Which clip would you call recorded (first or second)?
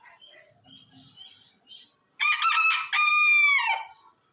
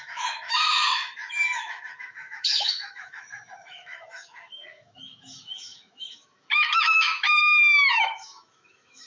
first